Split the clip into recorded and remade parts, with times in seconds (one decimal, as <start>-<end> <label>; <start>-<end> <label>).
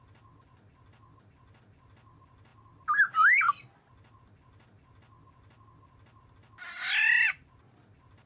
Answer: 0.0-8.3 recorded